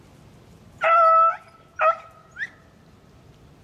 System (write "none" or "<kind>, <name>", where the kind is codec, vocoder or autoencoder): none